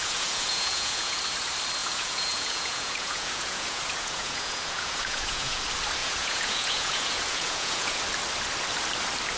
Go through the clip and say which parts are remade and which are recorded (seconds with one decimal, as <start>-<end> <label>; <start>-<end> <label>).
0.0-1.2 remade; 1.2-1.8 recorded; 1.8-5.6 remade; 5.6-6.0 recorded; 6.0-8.0 remade; 8.0-9.4 recorded